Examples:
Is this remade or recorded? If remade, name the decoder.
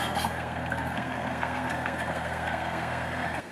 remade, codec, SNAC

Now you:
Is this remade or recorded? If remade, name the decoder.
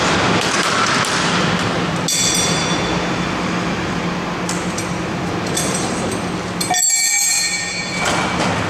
recorded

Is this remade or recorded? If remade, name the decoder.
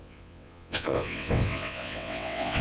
remade, vocoder, WaveNeXt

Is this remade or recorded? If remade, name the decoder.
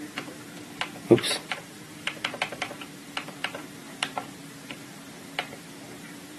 remade, vocoder, BigVGAN v2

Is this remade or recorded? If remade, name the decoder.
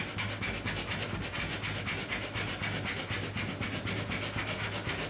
recorded